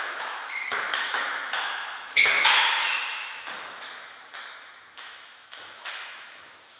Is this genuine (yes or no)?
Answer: no